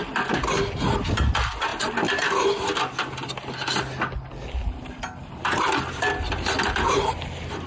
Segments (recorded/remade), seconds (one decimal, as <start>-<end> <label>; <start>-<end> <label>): 0.0-7.7 recorded